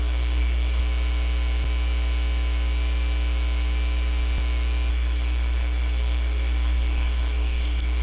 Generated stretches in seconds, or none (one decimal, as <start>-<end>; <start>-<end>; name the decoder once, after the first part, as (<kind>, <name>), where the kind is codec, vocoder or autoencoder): 0.0-0.8 (codec, SNAC); 4.9-8.0